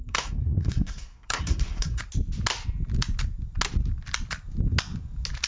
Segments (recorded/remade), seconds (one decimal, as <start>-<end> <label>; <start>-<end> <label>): 0.0-2.0 remade; 2.0-5.5 recorded